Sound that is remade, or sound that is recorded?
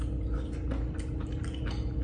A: recorded